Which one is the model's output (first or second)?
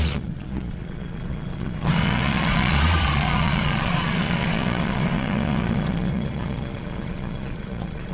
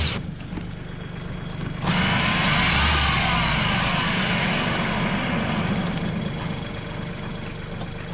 first